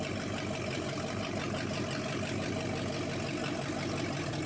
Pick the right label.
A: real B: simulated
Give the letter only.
A